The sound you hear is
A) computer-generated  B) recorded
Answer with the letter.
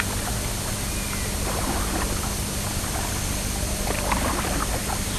B